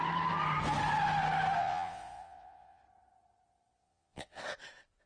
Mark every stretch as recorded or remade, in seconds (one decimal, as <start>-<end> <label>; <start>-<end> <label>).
0.0-1.6 recorded; 1.6-2.8 remade; 2.8-3.8 recorded; 3.8-4.4 remade; 4.4-5.1 recorded